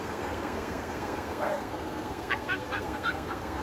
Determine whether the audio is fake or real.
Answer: fake